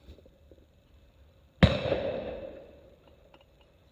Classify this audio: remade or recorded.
recorded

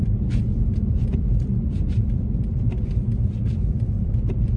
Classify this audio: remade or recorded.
remade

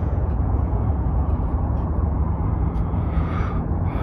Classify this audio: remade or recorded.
remade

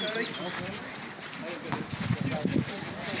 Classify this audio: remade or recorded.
recorded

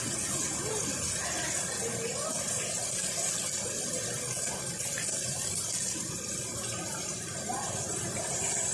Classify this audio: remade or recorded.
recorded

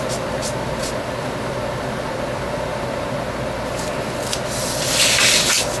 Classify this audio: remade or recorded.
recorded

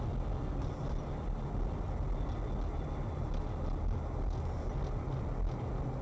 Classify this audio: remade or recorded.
recorded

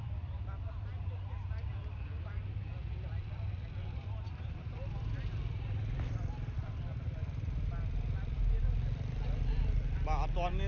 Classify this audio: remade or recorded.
remade